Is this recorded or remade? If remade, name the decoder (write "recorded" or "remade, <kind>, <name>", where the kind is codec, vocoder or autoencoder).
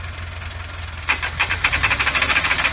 recorded